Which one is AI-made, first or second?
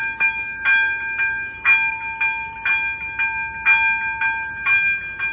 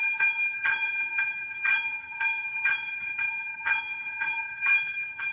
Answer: second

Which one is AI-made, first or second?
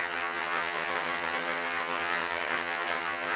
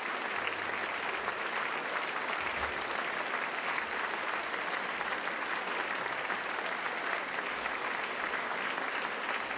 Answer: first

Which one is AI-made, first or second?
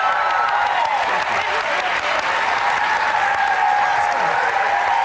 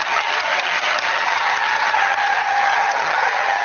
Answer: second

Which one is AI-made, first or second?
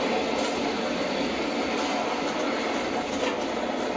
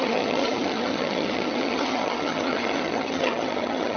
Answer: second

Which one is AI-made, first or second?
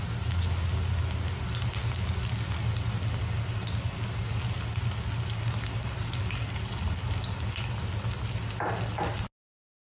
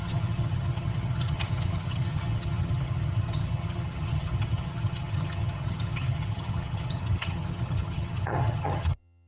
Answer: second